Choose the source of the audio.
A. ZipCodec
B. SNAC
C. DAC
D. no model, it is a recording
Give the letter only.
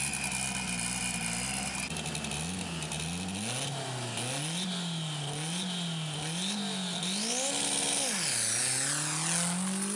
D